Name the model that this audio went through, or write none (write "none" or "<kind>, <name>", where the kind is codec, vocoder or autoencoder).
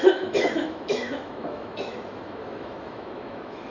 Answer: autoencoder, DAC-VAE